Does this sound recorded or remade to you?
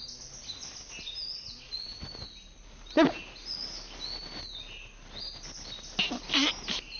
recorded